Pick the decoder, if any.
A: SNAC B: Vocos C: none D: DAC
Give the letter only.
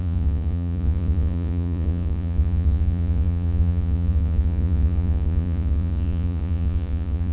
B